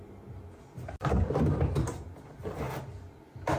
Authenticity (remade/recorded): recorded